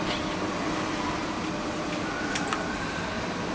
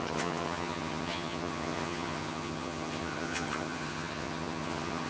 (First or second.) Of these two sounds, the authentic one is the first